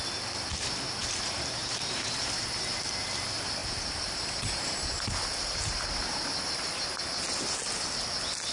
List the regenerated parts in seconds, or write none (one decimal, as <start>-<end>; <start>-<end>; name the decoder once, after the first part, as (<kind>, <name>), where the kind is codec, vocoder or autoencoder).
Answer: 1.0-2.2 (vocoder, BigVGAN v2); 3.6-6.7